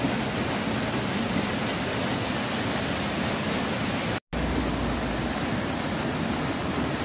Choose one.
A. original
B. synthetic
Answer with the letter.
A